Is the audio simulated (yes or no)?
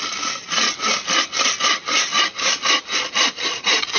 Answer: no